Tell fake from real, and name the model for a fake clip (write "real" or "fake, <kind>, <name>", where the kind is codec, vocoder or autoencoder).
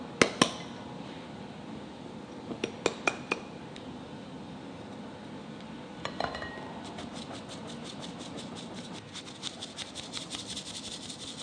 real